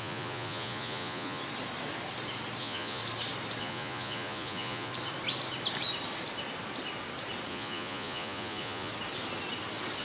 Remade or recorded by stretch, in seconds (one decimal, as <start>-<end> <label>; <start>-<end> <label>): 0.0-1.4 remade; 1.4-2.6 recorded; 2.6-3.0 remade; 3.0-3.6 recorded; 3.6-4.9 remade; 4.9-7.5 recorded; 7.5-8.9 remade; 8.9-10.0 recorded